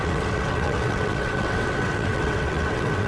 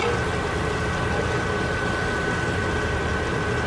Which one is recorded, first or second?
second